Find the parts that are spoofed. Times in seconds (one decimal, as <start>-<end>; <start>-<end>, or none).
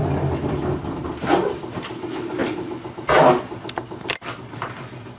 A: none